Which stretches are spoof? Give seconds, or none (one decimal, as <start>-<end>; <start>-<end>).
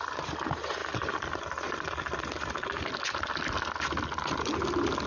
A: none